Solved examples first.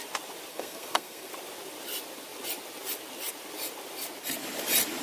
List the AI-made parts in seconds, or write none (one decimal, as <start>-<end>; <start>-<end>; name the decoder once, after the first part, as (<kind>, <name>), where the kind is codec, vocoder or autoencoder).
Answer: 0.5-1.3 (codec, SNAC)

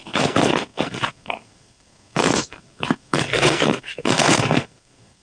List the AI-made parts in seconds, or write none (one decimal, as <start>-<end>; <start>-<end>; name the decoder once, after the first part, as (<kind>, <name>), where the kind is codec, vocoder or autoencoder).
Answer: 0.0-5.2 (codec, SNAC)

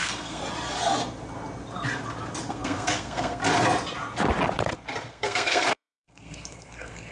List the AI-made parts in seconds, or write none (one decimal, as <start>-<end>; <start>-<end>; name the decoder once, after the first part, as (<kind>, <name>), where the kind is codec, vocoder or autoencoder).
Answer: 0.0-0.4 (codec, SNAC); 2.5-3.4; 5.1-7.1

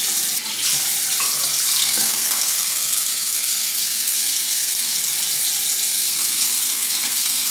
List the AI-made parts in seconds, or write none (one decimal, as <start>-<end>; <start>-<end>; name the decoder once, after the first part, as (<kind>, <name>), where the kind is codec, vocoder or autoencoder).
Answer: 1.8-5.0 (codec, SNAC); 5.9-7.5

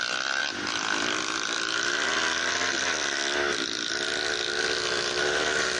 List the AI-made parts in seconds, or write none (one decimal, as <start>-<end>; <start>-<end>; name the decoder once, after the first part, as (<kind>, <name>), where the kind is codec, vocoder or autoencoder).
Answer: none